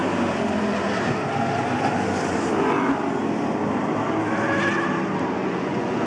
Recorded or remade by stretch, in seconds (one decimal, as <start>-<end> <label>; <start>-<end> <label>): 0.0-5.4 recorded; 5.4-6.1 remade